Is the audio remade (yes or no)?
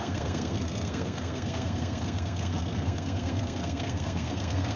yes